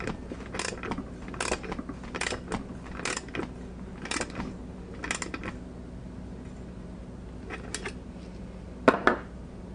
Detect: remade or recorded recorded